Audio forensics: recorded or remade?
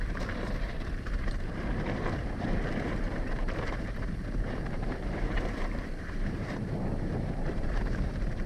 remade